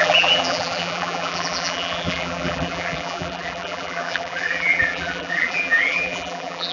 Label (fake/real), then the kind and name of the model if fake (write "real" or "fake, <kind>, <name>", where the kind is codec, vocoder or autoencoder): fake, vocoder, BigVGAN v2